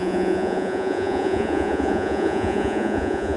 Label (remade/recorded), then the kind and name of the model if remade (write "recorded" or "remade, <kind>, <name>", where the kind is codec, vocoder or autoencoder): remade, vocoder, Vocos